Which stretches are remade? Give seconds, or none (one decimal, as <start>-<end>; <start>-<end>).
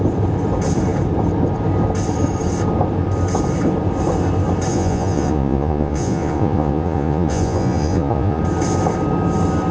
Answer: 4.7-8.4